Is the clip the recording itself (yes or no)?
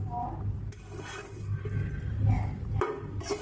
yes